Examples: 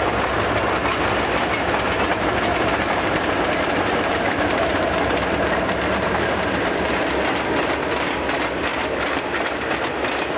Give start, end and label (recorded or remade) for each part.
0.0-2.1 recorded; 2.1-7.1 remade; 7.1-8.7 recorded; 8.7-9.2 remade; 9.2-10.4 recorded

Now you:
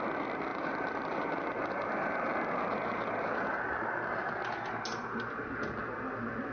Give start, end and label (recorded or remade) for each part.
0.0-0.5 recorded; 0.5-4.4 remade; 4.4-6.5 recorded

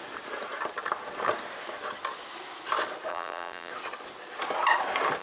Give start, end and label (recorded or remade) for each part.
0.0-3.1 recorded; 3.1-3.7 remade; 3.7-5.2 recorded